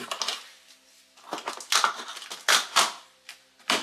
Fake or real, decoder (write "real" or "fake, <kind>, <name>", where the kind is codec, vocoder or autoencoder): real